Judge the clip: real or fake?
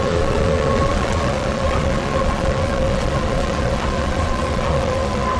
fake